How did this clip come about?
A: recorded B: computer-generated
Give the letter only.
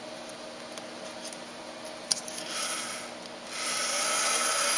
A